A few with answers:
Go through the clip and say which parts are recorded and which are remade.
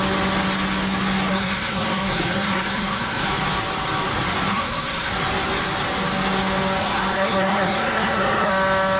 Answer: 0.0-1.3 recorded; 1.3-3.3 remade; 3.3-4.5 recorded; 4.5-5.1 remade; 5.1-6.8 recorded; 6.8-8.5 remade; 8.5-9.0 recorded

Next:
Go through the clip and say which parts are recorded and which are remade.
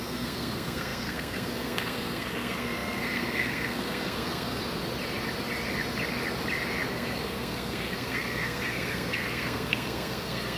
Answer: 0.0-4.6 remade; 4.6-6.9 recorded; 6.9-10.6 remade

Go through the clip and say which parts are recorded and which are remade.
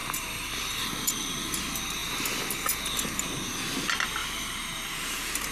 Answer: 0.0-1.6 remade; 1.6-4.2 recorded; 4.2-5.5 remade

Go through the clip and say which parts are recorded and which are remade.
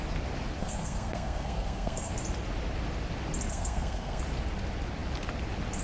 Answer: 0.0-0.6 recorded; 0.6-2.1 remade; 2.1-3.5 recorded; 3.5-4.2 remade; 4.2-5.8 recorded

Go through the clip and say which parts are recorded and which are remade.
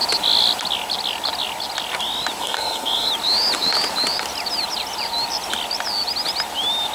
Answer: 0.0-2.4 recorded; 2.4-3.1 remade; 3.1-6.9 recorded